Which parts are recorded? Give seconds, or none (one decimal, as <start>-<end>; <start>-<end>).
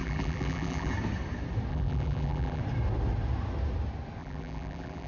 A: 0.9-1.7; 2.6-4.2